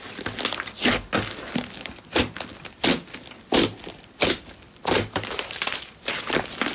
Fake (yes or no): no